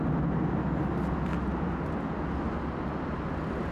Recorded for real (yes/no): yes